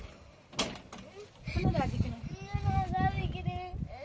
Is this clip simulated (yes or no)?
no